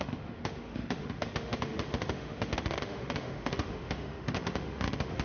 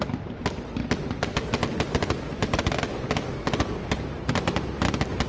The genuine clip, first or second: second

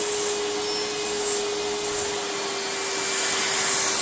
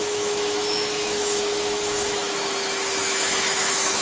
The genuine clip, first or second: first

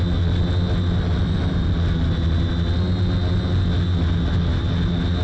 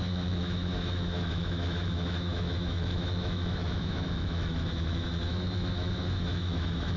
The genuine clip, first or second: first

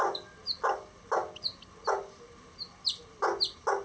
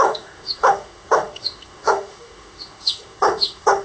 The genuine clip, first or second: first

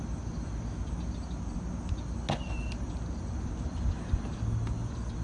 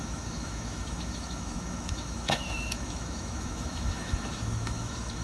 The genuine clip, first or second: first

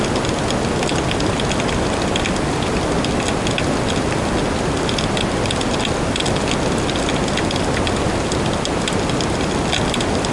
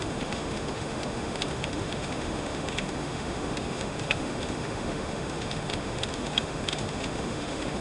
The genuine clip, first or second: first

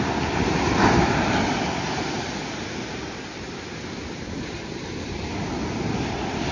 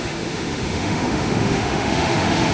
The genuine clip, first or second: first